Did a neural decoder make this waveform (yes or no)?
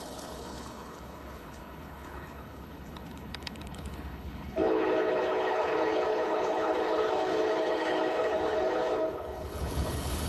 yes